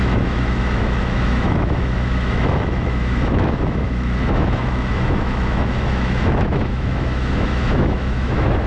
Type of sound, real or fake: fake